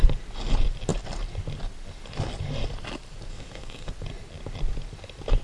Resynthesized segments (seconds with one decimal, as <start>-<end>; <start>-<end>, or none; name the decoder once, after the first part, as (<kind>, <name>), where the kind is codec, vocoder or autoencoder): 3.3-3.9 (codec, SNAC)